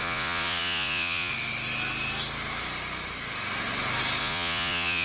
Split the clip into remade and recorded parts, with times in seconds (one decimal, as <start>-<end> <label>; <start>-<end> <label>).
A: 0.0-1.3 remade; 1.3-4.2 recorded; 4.2-5.0 remade

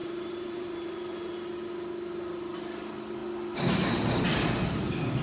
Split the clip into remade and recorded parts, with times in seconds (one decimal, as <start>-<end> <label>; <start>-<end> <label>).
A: 0.0-1.3 remade; 1.3-5.2 recorded

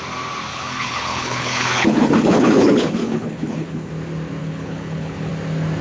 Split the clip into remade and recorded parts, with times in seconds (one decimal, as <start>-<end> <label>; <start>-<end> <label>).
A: 0.0-0.5 recorded; 0.5-3.9 remade; 3.9-4.4 recorded; 4.4-5.3 remade; 5.3-5.8 recorded